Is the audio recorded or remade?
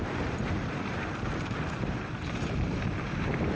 remade